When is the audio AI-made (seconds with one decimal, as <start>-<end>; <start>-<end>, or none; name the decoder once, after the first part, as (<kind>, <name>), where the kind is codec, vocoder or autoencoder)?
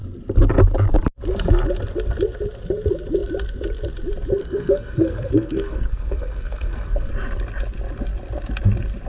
4.4-7.1 (codec, SNAC)